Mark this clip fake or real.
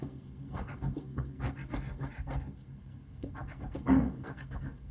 fake